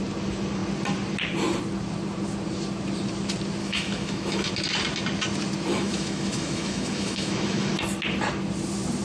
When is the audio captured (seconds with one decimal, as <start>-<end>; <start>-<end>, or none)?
0.0-3.6; 4.5-5.7; 7.7-9.0